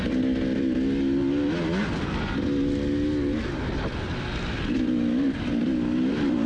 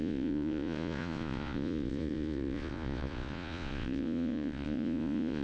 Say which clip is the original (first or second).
first